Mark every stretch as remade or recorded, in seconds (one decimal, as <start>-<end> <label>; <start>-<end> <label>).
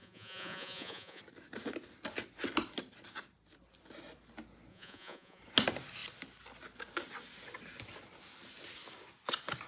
0.0-1.2 remade; 1.2-4.7 recorded; 4.7-5.4 remade; 5.4-9.7 recorded